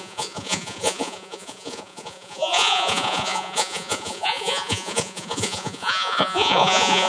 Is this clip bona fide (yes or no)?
no